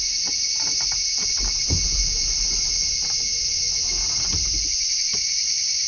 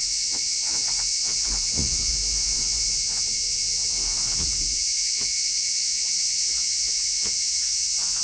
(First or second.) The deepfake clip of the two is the second